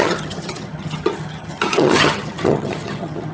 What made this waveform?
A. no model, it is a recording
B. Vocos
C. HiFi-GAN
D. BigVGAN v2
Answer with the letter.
C